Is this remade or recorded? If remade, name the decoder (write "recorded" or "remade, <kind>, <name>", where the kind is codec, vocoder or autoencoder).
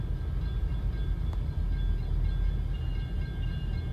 recorded